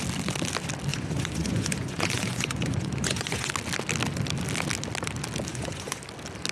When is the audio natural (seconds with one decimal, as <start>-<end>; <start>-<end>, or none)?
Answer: 0.0-0.9; 3.5-5.5; 6.0-6.5